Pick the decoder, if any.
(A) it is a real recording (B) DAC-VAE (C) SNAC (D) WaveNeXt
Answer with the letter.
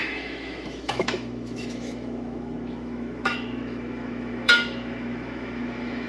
B